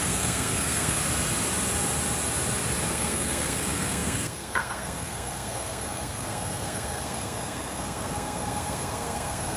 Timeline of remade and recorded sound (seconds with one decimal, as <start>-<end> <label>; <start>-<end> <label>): 0.0-1.0 remade; 1.0-2.9 recorded; 2.9-9.6 remade